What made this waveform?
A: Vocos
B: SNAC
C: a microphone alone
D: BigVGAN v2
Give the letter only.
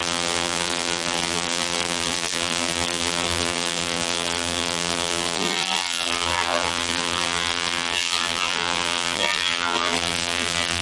D